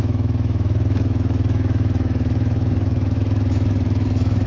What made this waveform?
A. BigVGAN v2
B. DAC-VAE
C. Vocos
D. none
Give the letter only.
B